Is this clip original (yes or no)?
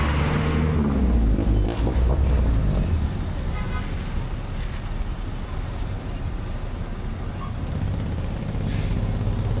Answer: yes